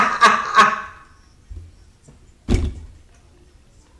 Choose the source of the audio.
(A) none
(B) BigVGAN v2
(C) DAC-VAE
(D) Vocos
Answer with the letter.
A